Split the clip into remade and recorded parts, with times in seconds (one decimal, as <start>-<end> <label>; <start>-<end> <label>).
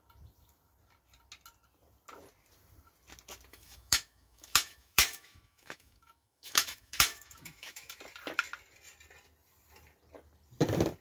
0.0-3.5 recorded; 3.5-8.0 remade; 8.0-11.0 recorded